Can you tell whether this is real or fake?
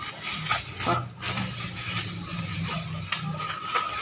real